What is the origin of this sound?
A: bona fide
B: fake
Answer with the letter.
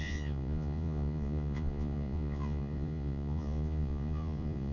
B